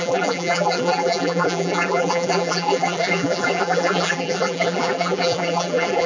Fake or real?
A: fake